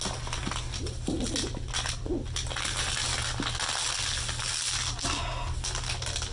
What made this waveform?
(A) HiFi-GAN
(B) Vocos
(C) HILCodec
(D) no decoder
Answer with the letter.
D